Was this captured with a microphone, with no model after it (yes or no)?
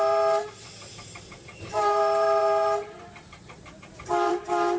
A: no